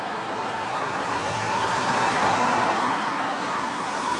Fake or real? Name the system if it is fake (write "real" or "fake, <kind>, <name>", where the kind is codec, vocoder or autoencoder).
fake, codec, SNAC